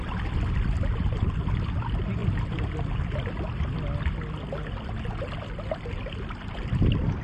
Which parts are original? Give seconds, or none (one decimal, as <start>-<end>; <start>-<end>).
0.0-7.2

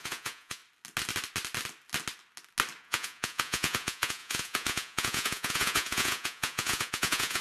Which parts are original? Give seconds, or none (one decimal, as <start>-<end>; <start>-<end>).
0.6-2.8

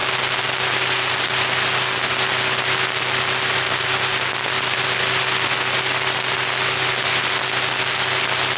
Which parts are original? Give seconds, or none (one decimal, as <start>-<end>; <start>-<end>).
0.0-8.6

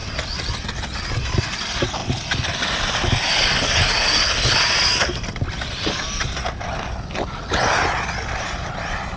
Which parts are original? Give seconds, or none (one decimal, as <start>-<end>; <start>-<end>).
1.1-5.0; 6.0-9.2